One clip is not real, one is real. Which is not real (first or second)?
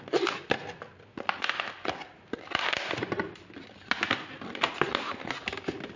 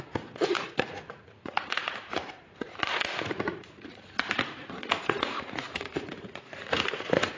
second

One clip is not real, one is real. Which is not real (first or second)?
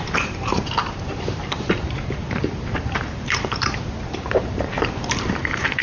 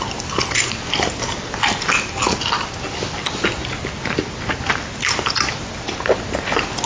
first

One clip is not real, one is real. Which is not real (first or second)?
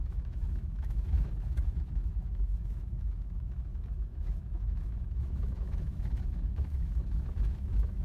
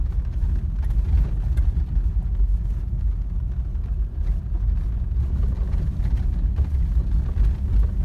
first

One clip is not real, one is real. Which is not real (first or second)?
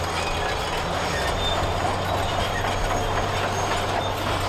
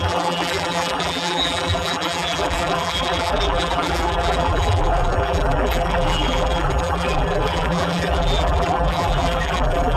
second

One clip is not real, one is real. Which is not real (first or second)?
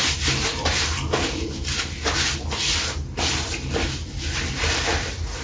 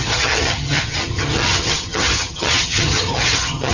second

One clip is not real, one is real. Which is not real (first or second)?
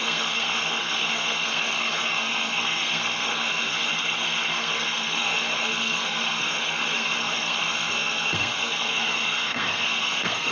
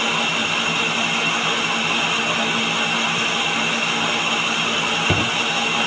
first